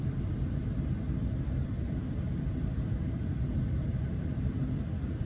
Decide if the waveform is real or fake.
real